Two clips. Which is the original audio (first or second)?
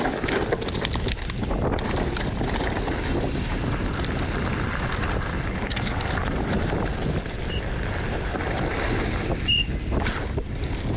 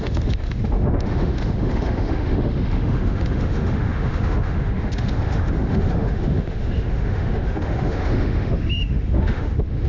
first